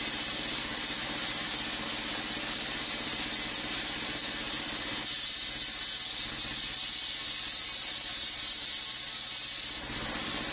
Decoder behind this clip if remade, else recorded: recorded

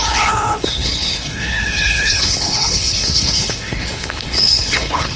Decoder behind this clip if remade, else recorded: remade, codec, HILCodec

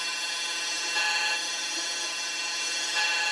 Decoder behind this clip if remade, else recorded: remade, autoencoder, DAC-VAE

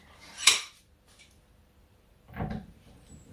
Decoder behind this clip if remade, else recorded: remade, vocoder, BigVGAN v2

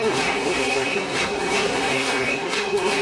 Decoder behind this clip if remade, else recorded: remade, codec, SNAC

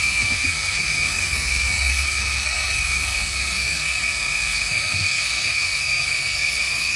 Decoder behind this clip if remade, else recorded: remade, codec, SNAC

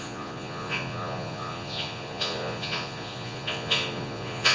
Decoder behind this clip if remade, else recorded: remade, vocoder, Vocos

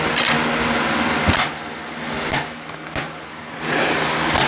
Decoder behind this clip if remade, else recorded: recorded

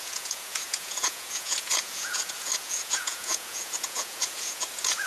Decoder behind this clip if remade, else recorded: remade, vocoder, Vocos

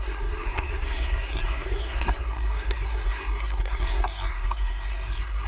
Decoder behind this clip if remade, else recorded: remade, codec, SNAC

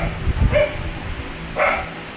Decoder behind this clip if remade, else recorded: recorded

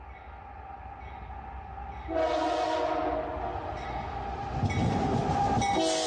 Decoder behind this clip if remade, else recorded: recorded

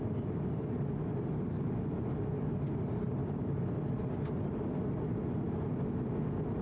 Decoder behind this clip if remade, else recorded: recorded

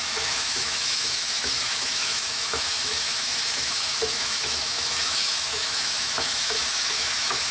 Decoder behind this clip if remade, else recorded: remade, autoencoder, DAC-VAE